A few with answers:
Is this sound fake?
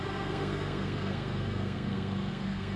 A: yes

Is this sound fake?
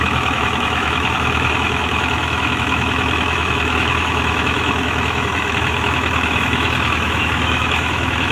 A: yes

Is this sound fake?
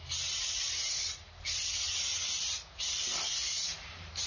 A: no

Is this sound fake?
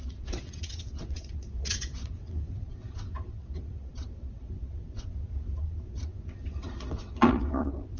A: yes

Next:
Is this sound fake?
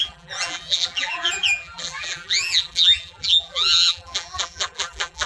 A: yes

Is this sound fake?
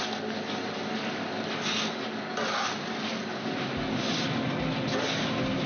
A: no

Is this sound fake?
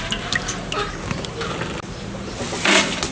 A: no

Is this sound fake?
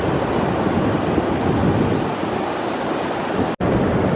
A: no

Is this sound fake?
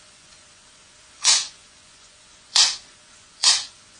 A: yes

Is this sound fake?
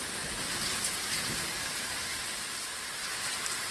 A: no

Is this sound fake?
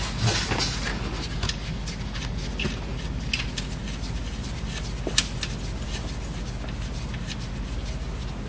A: no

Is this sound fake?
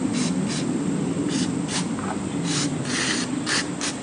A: no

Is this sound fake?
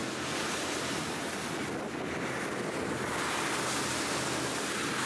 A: no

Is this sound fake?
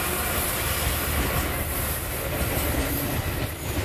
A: no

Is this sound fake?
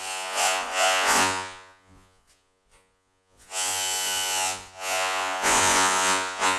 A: yes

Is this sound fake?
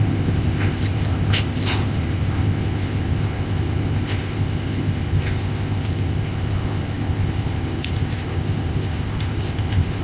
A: yes